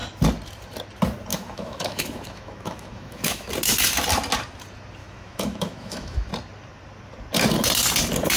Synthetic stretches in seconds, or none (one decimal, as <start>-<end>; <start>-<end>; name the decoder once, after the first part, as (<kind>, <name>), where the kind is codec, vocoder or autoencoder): 1.3-3.5 (autoencoder, DAC-VAE); 5.0-6.3